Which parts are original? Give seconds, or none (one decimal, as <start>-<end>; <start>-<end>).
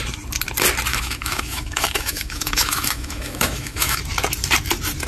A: 0.0-0.9; 4.0-5.1